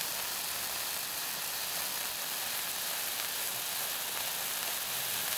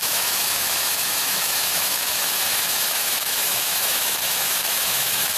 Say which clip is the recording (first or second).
first